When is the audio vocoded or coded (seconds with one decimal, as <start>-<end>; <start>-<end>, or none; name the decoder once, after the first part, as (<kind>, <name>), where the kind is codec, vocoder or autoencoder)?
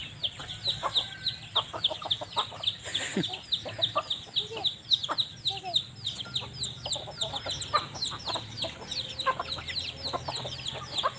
none